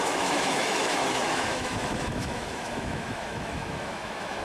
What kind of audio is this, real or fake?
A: fake